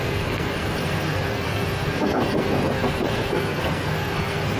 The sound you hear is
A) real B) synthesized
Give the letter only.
B